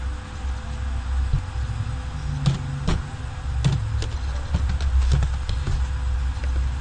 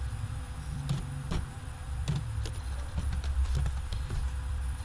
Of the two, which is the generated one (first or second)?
second